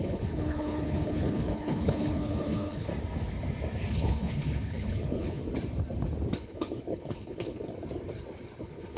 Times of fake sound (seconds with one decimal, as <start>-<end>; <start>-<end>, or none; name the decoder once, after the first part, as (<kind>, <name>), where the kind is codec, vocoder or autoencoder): 0.0-2.9 (codec, HILCodec); 3.9-5.4; 6.4-7.7; 8.6-9.0